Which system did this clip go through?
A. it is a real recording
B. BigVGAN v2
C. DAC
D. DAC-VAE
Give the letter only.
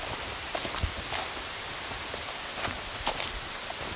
A